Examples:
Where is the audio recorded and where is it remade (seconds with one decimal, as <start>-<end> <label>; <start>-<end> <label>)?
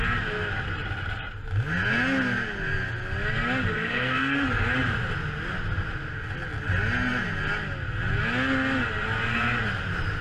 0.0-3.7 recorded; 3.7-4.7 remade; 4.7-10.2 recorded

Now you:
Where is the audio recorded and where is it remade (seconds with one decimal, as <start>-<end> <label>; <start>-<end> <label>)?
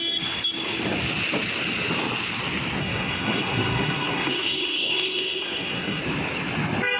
0.0-2.8 recorded; 2.8-6.0 remade; 6.0-7.0 recorded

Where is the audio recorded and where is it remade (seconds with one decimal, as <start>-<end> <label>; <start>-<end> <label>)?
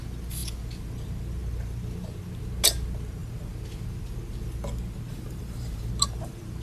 0.0-5.1 recorded; 5.1-5.9 remade; 5.9-6.6 recorded